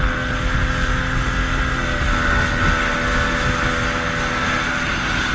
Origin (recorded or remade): recorded